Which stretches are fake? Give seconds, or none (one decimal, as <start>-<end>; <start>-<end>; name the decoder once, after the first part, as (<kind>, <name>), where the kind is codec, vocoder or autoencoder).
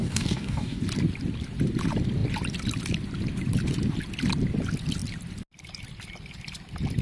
0.0-0.8 (codec, DAC)